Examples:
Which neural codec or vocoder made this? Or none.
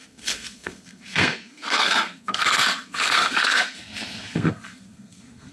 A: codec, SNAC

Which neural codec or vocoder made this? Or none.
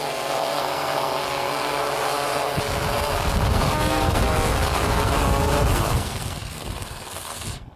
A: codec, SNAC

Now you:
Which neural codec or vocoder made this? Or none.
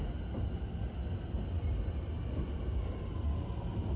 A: none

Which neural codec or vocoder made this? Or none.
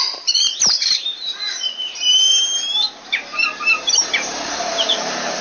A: vocoder, BigVGAN v2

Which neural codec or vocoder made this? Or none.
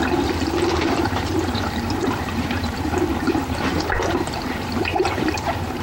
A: vocoder, BigVGAN v2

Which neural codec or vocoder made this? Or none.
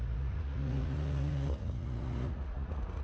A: vocoder, Vocos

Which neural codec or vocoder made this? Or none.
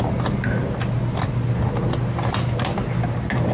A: none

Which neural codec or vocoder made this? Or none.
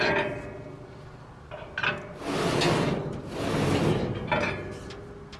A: none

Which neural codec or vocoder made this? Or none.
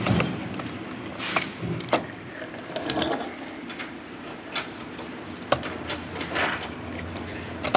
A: vocoder, BigVGAN v2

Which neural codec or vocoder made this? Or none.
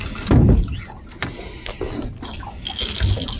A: none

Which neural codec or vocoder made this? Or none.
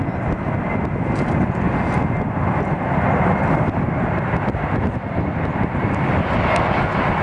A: none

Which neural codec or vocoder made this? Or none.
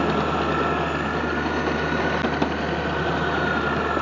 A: none